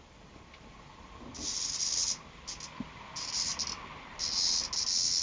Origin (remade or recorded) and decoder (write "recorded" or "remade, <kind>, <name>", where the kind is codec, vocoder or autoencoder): recorded